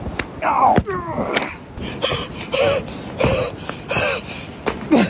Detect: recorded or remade recorded